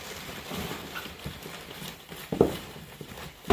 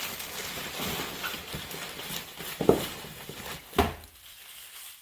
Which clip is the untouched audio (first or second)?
second